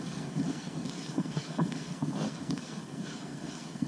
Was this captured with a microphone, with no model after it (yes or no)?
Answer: no